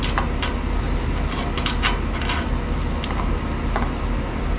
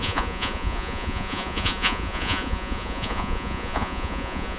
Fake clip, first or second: second